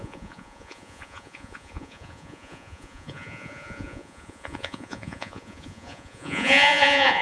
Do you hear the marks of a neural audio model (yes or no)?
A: yes